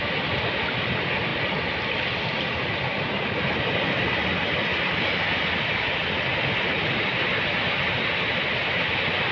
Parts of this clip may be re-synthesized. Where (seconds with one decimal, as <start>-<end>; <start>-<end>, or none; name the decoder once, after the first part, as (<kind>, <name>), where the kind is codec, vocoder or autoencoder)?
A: none